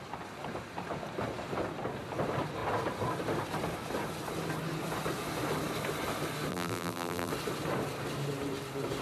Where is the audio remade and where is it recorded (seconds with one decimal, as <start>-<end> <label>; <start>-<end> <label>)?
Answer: 0.0-6.5 recorded; 6.5-7.3 remade; 7.3-9.0 recorded